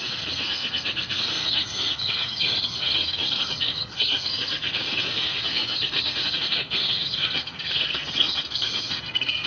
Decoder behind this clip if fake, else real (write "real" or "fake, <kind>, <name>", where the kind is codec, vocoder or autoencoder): fake, codec, SNAC